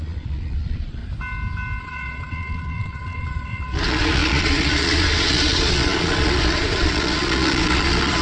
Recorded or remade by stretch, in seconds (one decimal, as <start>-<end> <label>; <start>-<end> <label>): 0.0-1.0 remade; 1.0-1.8 recorded; 1.8-8.2 remade